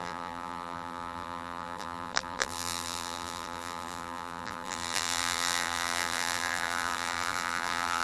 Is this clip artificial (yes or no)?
yes